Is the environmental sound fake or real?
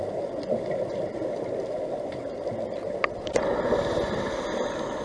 real